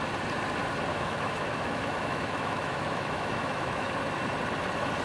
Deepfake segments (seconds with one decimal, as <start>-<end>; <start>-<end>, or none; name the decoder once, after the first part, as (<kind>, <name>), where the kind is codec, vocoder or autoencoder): 0.9-3.9 (autoencoder, DAC-VAE)